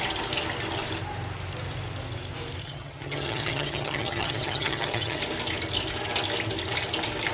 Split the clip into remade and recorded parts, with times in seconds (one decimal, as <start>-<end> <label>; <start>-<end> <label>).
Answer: 0.0-2.6 recorded; 2.6-5.2 remade; 5.2-7.3 recorded